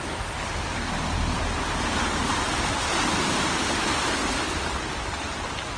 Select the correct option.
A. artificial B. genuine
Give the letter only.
B